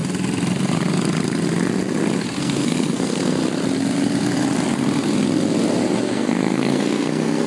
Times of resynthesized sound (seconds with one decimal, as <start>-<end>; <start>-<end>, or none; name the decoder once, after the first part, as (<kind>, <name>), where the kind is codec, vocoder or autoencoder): 2.4-3.4 (codec, SNAC); 6.0-7.5